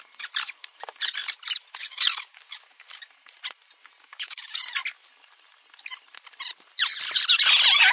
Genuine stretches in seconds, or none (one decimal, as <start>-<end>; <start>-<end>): 0.0-1.8; 3.0-4.0; 4.6-7.9